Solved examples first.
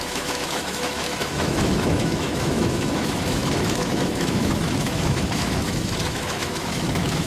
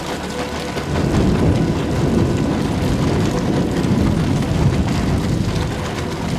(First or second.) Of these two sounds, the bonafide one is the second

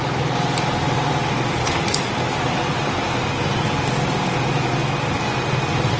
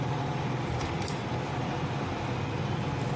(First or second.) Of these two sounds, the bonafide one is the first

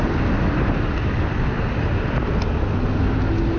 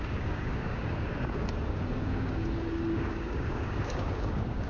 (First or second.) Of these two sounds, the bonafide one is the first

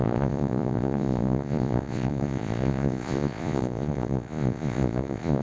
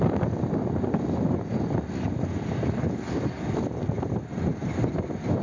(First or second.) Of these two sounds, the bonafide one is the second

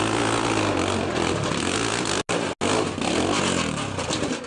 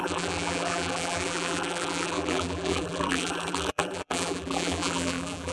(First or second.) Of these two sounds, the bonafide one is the first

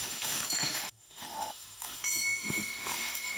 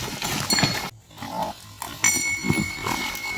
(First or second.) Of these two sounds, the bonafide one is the second